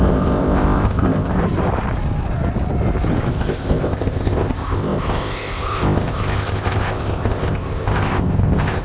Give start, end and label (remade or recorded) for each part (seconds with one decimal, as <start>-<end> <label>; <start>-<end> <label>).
0.0-1.4 remade; 1.4-3.3 recorded; 3.3-8.8 remade